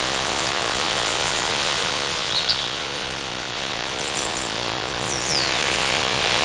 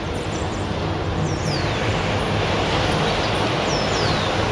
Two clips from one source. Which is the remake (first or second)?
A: first